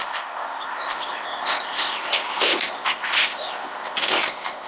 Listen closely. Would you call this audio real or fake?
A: fake